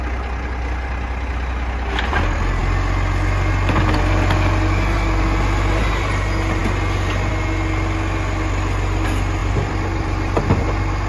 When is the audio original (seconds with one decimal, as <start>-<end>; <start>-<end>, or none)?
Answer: 0.0-9.4; 10.4-11.1